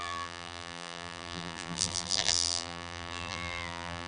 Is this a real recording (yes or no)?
no